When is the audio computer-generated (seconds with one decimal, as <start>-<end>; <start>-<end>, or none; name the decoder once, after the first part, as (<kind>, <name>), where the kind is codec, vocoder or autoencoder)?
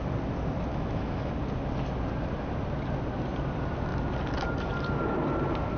0.7-1.3 (autoencoder, DAC-VAE)